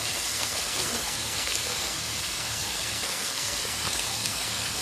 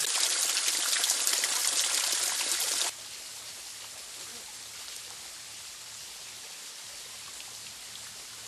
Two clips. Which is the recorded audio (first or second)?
second